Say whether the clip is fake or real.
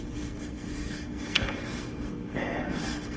fake